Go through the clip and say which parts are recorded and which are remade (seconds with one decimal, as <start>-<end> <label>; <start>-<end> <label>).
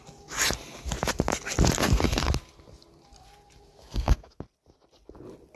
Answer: 0.0-1.8 recorded; 1.8-2.3 remade; 2.3-3.8 recorded; 3.8-4.4 remade; 4.4-5.6 recorded